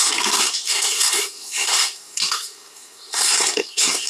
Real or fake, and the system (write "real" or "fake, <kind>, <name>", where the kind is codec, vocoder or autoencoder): fake, codec, SNAC